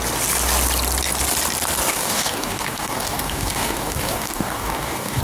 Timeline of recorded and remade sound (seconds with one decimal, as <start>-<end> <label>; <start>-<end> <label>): 0.0-1.9 recorded; 1.9-5.2 remade